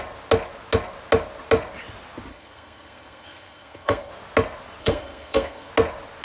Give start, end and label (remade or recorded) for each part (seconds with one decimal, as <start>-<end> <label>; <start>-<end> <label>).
0.0-2.3 recorded; 2.3-4.1 remade; 4.1-4.8 recorded; 4.8-5.7 remade; 5.7-6.2 recorded